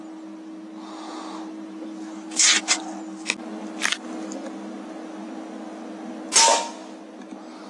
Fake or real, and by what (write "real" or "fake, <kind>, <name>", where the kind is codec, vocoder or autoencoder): real